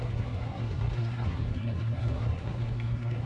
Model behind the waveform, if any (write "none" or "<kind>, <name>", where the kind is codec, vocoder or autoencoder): codec, SNAC